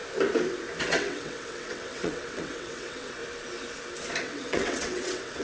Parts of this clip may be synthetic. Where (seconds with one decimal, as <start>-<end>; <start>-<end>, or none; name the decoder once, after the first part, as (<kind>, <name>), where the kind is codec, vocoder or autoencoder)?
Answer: 0.8-3.2 (vocoder, WaveNeXt); 4.2-5.4